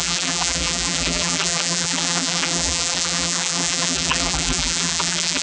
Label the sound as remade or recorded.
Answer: remade